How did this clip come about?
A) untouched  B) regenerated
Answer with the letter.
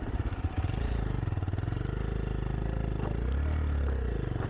B